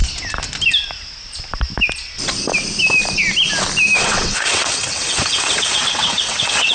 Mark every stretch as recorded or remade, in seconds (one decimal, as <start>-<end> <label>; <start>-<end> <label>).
0.0-4.0 recorded; 4.0-6.7 remade